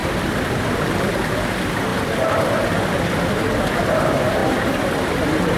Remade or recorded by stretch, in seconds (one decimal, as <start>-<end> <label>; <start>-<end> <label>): 0.0-1.1 remade; 1.1-1.9 recorded; 1.9-3.6 remade; 3.6-4.4 recorded; 4.4-5.1 remade; 5.1-5.6 recorded